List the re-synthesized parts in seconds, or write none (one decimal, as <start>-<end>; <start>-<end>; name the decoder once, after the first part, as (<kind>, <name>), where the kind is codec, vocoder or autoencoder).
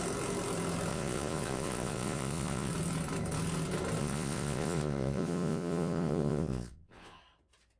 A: 0.9-2.7 (vocoder, Vocos); 4.0-7.2